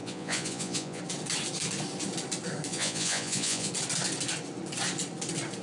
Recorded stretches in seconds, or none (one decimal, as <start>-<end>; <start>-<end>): 1.0-2.7; 3.7-5.6